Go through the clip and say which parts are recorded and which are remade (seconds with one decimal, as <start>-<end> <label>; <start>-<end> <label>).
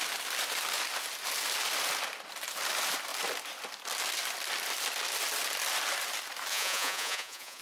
0.0-6.5 recorded; 6.5-7.6 remade